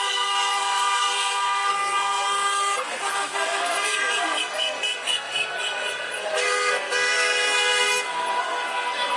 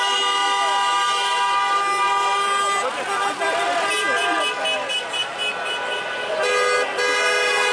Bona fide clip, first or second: second